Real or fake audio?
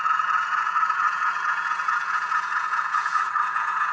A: fake